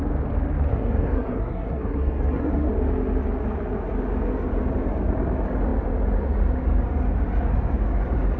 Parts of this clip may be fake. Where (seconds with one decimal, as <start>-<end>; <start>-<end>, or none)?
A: 0.7-2.7